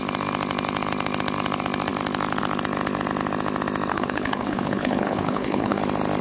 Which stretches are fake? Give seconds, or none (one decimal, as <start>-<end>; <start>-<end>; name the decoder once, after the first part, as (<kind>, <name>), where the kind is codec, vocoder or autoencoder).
3.9-5.8 (codec, HILCodec)

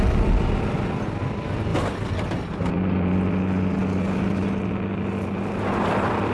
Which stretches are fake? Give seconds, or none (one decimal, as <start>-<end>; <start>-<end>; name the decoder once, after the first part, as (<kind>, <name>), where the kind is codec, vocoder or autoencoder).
none

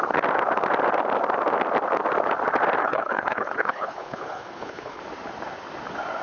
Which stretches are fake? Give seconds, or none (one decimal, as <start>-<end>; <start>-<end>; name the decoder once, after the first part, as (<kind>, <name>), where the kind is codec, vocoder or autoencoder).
2.8-5.0 (codec, HILCodec)

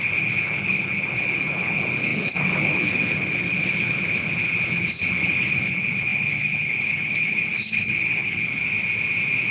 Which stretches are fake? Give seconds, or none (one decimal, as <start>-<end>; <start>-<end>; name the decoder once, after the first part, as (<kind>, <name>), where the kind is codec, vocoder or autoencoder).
0.0-8.6 (codec, HILCodec)

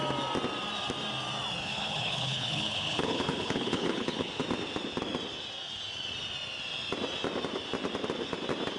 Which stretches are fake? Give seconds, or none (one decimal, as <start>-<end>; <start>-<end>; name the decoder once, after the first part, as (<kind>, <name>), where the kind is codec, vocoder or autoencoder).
1.6-4.3 (codec, HILCodec)

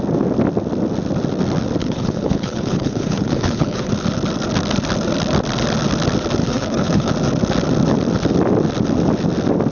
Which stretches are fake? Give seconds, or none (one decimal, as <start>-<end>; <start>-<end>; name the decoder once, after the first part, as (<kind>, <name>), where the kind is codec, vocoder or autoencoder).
1.8-3.9 (codec, HILCodec); 6.4-7.1

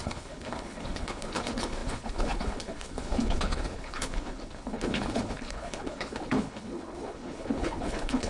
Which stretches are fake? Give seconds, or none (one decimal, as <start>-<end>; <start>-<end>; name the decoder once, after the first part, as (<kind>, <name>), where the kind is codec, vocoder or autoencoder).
0.0-8.3 (codec, HILCodec)